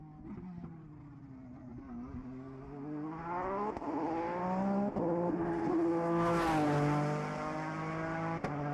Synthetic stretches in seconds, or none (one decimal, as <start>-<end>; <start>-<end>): none